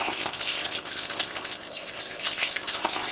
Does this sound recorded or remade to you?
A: remade